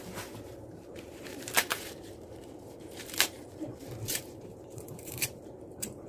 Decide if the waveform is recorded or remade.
remade